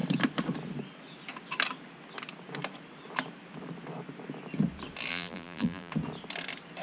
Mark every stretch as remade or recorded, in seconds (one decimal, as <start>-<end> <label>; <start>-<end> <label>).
0.0-5.1 recorded; 5.1-5.9 remade; 5.9-6.8 recorded